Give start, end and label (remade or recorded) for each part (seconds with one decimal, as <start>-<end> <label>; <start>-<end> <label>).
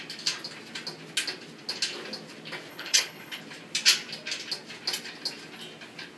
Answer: 0.0-2.7 recorded; 2.7-3.4 remade; 3.4-6.2 recorded